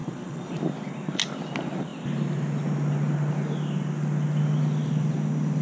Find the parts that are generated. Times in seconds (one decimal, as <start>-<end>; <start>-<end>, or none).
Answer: 0.0-0.6